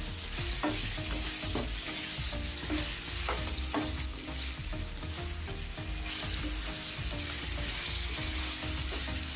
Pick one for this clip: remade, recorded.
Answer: recorded